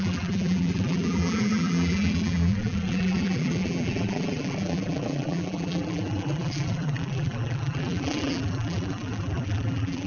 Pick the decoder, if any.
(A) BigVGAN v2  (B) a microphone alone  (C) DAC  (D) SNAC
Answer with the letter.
A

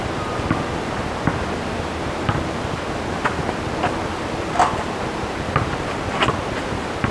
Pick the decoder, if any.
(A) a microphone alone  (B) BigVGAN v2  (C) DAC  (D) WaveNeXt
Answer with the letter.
A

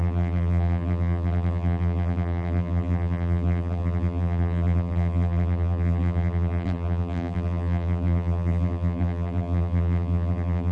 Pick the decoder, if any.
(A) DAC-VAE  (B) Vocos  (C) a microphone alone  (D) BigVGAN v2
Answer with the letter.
D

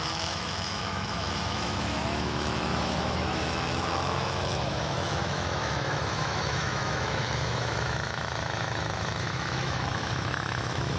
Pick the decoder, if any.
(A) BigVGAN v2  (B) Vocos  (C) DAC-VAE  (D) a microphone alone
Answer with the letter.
C